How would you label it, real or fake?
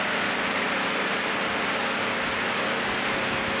real